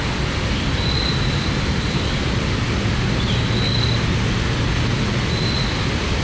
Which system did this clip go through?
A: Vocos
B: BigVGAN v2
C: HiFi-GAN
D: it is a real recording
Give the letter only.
D